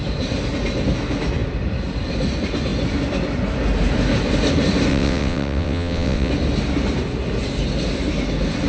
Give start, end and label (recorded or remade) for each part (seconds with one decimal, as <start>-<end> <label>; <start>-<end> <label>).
0.0-4.9 recorded; 4.9-6.3 remade; 6.3-8.7 recorded